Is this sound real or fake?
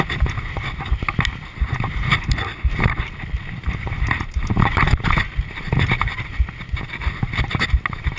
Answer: real